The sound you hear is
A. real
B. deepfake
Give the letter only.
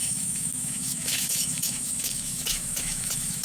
B